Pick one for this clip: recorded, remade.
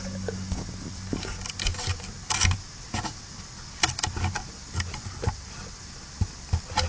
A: recorded